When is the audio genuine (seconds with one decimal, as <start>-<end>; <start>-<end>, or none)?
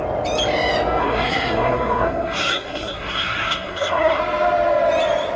0.0-1.0; 4.2-5.4